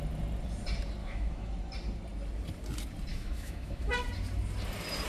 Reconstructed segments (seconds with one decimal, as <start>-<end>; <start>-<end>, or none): 1.0-1.5; 3.1-3.9